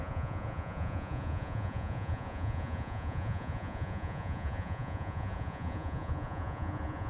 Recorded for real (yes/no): no